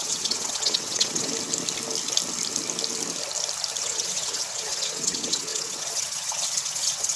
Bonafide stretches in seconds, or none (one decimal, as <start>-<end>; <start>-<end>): 1.3-3.8